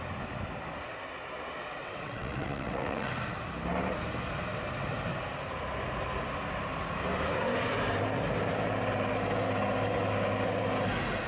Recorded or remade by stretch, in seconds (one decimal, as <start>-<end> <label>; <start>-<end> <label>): 0.0-1.8 recorded; 1.8-3.1 remade; 3.1-11.3 recorded